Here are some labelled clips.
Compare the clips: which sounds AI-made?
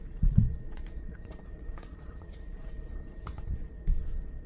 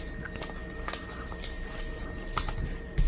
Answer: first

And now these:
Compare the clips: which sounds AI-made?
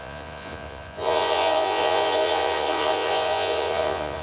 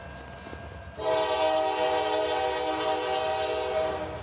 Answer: first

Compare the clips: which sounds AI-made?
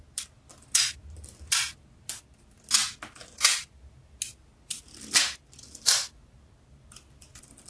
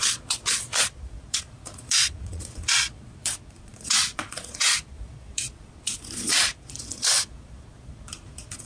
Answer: second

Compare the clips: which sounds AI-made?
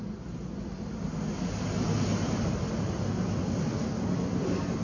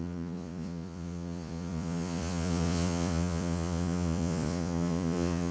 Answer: second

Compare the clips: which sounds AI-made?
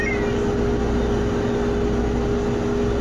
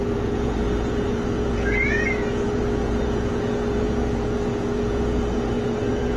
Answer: second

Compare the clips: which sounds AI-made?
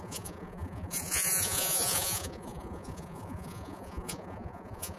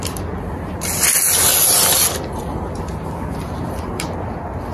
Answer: first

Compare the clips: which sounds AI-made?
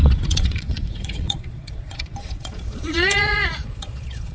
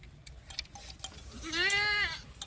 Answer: first